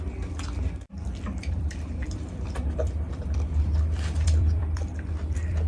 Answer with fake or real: fake